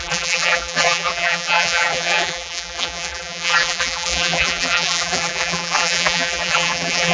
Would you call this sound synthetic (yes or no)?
yes